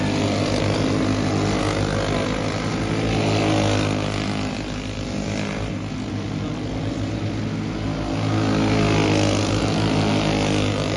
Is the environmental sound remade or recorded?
recorded